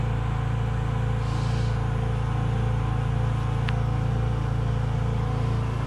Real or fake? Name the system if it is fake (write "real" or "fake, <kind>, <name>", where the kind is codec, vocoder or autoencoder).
real